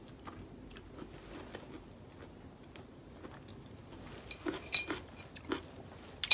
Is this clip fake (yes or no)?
no